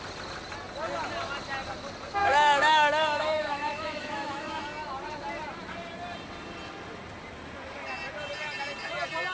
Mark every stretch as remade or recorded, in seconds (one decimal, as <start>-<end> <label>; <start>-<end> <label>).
0.0-2.2 recorded; 2.2-4.6 remade; 4.6-9.3 recorded